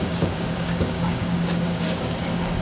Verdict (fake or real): fake